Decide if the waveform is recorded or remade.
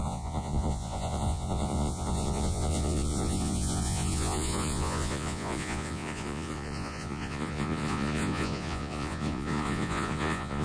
remade